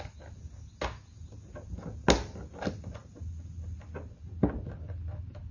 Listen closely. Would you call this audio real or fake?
real